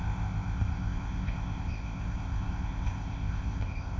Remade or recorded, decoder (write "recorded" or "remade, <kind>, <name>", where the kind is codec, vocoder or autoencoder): remade, codec, ZipCodec